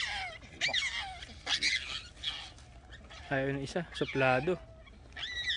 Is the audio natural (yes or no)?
yes